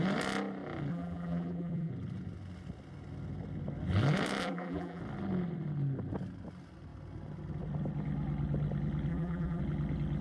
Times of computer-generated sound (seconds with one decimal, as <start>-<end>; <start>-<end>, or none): 0.9-1.9; 4.4-5.0; 9.1-9.6